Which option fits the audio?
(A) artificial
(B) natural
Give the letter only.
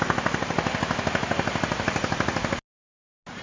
B